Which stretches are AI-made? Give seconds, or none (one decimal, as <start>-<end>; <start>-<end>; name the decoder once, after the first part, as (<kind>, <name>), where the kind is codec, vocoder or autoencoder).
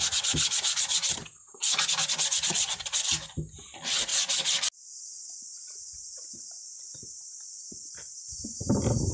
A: none